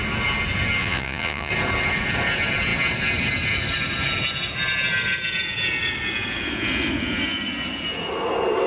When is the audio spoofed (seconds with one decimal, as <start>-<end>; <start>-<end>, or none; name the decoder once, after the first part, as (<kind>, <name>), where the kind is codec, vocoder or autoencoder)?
0.8-1.5 (vocoder, Vocos)